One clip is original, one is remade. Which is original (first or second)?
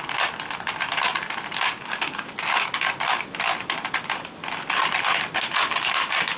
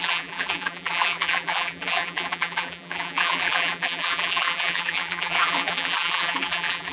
first